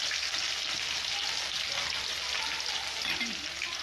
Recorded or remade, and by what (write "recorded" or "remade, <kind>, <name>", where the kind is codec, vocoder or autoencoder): recorded